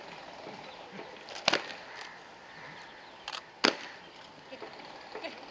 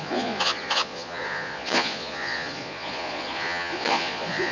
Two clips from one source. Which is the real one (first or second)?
first